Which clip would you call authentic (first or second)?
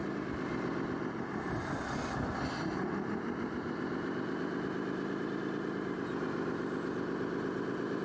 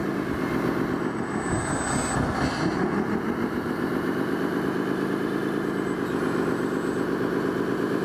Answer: second